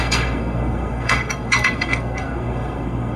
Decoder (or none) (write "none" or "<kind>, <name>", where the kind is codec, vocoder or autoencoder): codec, SNAC